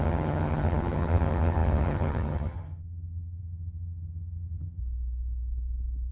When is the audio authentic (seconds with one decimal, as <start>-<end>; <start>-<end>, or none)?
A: 4.8-6.1